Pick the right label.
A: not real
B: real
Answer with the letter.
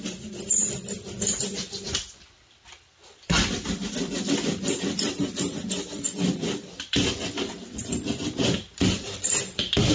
A